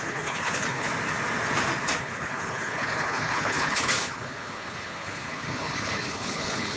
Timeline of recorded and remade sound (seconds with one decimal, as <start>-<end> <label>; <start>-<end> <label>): 0.0-0.9 remade; 0.9-2.0 recorded; 2.0-6.8 remade